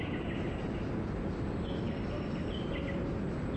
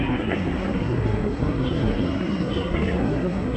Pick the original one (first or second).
first